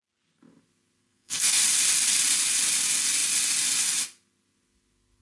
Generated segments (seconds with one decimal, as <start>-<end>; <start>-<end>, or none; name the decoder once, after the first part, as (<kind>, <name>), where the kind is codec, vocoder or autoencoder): 1.0-1.6 (codec, SNAC)